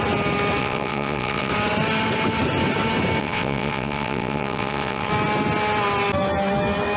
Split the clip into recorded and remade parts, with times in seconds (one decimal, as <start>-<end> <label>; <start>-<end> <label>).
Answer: 0.0-0.6 recorded; 0.6-1.5 remade; 1.5-3.2 recorded; 3.2-5.1 remade; 5.1-7.0 recorded